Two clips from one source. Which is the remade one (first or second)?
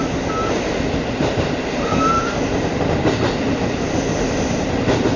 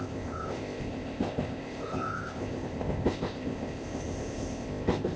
second